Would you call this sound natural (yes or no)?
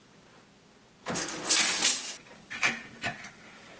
yes